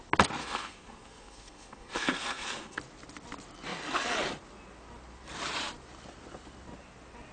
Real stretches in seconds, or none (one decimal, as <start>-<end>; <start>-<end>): 0.0-0.4; 2.8-7.3